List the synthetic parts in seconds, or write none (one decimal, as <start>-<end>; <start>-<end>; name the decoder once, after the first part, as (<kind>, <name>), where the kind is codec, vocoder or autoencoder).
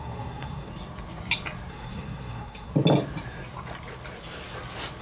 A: 0.0-0.7 (codec, SNAC); 1.7-2.7